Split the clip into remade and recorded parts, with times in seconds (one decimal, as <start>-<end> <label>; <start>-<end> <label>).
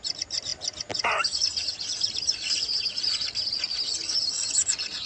0.0-5.1 recorded